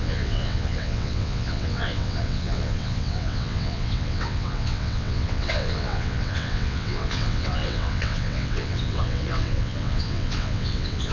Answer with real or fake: fake